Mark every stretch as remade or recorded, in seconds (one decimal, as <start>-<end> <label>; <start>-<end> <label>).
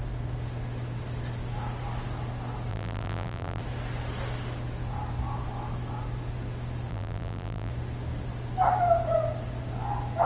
0.0-2.7 recorded; 2.7-3.6 remade; 3.6-6.9 recorded; 6.9-7.7 remade; 7.7-10.3 recorded